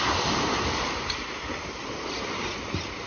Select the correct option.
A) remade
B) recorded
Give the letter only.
B